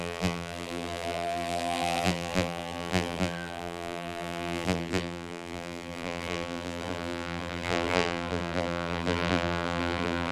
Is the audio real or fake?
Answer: fake